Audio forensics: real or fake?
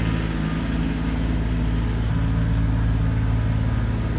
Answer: real